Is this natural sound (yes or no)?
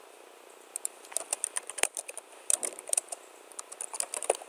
no